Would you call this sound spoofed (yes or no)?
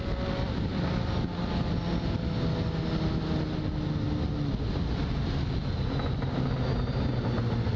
no